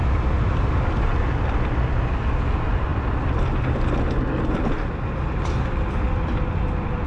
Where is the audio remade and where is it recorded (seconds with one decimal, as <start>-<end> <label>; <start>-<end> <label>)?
0.0-7.1 recorded